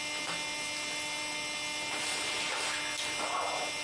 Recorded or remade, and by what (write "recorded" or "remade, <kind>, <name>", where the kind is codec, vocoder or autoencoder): recorded